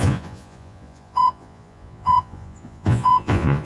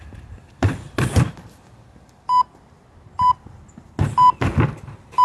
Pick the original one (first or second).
second